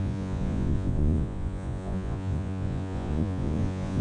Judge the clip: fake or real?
fake